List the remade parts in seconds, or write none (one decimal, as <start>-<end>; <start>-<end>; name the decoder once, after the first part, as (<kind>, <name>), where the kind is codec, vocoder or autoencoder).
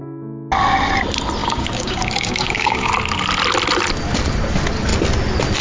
1.4-2.9 (codec, DAC)